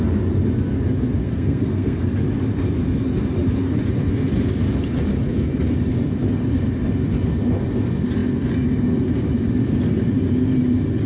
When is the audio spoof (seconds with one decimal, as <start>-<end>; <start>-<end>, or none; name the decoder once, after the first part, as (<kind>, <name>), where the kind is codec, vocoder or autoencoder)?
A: 1.2-2.1 (codec, SNAC)